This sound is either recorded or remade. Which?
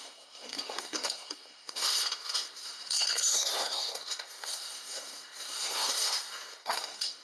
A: remade